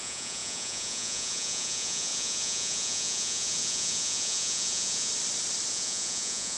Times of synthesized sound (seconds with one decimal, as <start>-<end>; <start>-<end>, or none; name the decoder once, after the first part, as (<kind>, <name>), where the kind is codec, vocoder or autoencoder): 0.0-5.1 (vocoder, Vocos); 5.7-6.6